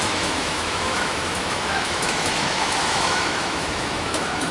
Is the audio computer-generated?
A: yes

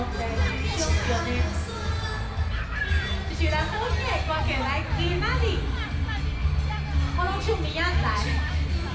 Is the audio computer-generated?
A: no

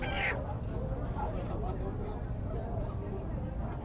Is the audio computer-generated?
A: no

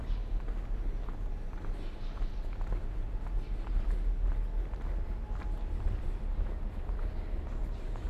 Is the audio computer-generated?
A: no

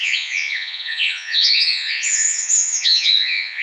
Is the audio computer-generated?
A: yes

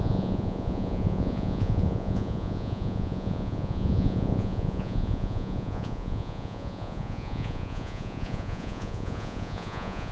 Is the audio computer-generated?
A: yes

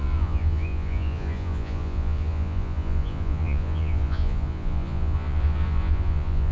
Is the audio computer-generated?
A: yes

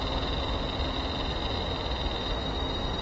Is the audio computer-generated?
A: no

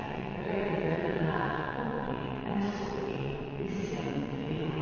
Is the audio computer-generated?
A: yes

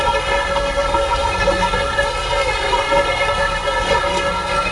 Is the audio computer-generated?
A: yes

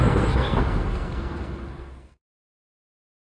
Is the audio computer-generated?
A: yes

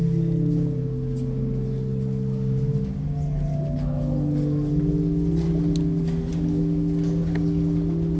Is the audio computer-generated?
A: no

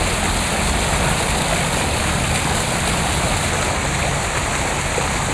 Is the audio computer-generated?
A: no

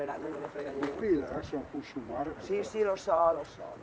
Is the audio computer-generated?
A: yes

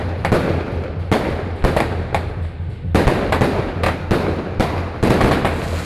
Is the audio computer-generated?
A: no